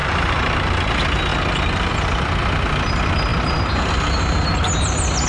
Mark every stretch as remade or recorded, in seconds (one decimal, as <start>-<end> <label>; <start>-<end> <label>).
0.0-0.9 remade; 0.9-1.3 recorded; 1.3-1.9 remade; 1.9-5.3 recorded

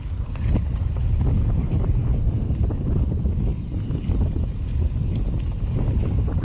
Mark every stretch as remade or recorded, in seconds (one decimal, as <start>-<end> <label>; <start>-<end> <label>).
0.0-6.4 recorded

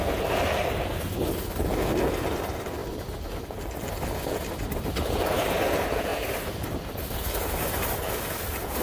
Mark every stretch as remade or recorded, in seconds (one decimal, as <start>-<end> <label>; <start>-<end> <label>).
0.0-8.8 recorded

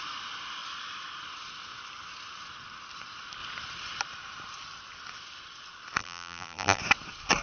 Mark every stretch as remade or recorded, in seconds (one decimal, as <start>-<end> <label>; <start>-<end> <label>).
0.0-6.0 recorded; 6.0-6.8 remade; 6.8-7.4 recorded

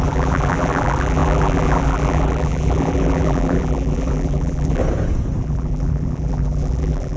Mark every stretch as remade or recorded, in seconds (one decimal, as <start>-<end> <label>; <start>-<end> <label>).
0.0-4.8 remade; 4.8-5.4 recorded; 5.4-7.2 remade